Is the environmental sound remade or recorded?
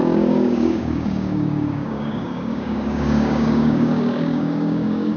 remade